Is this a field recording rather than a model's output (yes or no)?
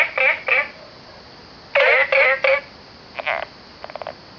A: yes